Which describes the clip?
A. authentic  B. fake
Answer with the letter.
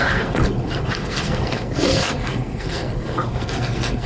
B